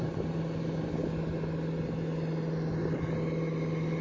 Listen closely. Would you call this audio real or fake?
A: real